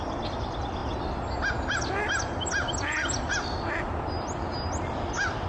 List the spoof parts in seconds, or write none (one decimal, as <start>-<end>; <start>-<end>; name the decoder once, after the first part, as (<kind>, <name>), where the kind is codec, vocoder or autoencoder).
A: none